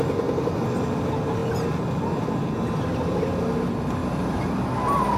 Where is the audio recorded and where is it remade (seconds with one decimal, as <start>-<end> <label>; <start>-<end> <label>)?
0.0-4.0 recorded; 4.0-5.2 remade